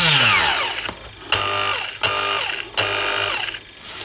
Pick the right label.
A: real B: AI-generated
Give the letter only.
A